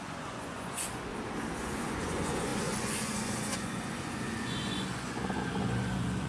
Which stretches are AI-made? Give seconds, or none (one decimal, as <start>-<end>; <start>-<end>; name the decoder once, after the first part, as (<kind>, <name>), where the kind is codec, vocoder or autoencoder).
0.0-1.1 (vocoder, Vocos); 1.6-6.3